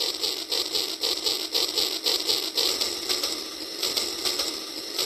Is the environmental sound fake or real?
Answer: real